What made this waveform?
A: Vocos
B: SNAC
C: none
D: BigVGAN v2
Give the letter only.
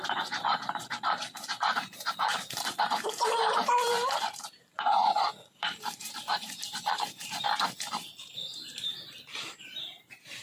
D